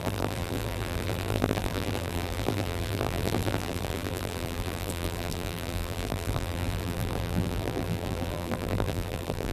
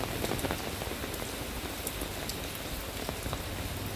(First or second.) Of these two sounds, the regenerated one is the first